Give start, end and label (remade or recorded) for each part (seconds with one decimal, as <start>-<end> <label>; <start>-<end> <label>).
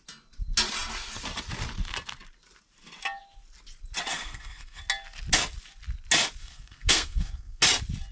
0.0-4.1 recorded; 4.1-4.8 remade; 4.8-6.4 recorded; 6.4-7.6 remade; 7.6-8.1 recorded